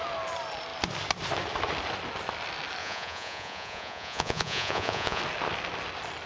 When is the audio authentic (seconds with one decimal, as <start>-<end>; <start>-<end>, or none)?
0.0-2.8; 5.2-6.3